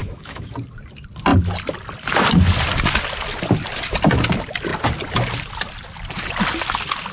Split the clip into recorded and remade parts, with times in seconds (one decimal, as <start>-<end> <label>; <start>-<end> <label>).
0.0-0.5 remade; 0.5-7.1 recorded